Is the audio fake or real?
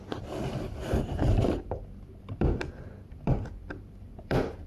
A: fake